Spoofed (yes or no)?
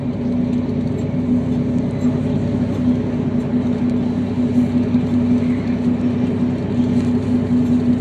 no